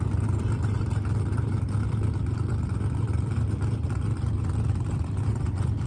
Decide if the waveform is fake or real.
fake